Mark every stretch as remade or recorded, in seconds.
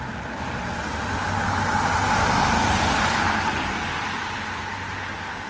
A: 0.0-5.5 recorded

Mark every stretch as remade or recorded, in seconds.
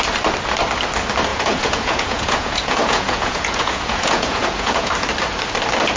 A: 0.0-1.3 recorded; 1.3-4.9 remade; 4.9-6.0 recorded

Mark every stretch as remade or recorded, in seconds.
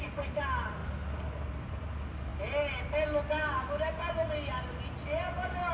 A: 0.0-5.7 recorded